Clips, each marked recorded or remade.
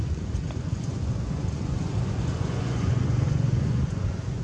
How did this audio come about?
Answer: remade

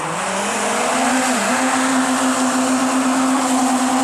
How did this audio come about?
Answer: recorded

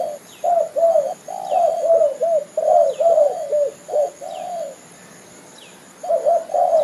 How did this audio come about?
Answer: recorded